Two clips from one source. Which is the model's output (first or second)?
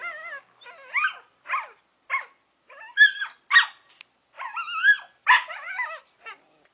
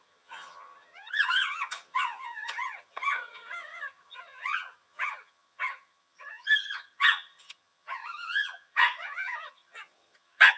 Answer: second